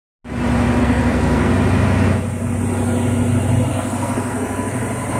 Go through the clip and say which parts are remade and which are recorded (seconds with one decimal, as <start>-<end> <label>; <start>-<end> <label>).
0.0-0.8 recorded; 0.8-1.5 remade; 1.5-3.7 recorded; 3.7-4.8 remade; 4.8-5.2 recorded